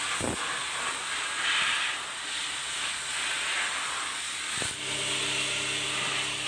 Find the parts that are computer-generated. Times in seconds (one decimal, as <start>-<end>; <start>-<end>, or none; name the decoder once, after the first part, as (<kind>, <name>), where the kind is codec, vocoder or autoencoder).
none